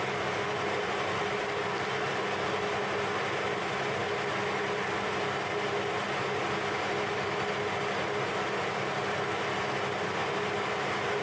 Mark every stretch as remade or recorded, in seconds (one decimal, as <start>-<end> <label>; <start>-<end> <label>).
0.0-11.2 recorded